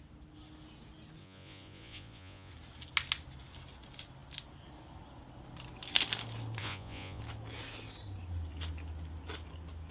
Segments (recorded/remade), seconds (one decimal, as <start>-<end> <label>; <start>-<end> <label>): 0.0-1.2 recorded; 1.2-2.5 remade; 2.5-6.6 recorded; 6.6-7.2 remade; 7.2-9.9 recorded